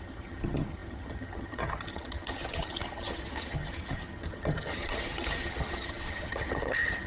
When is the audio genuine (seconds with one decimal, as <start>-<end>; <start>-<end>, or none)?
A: none